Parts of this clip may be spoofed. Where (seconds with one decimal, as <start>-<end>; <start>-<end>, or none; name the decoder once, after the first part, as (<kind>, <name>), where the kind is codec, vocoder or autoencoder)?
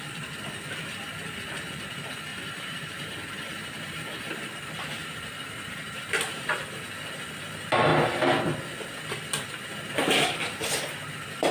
2.3-6.6 (vocoder, BigVGAN v2)